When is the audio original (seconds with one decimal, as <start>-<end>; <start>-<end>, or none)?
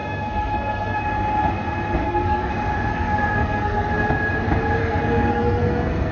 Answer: 1.0-2.0; 2.5-2.9; 3.9-4.8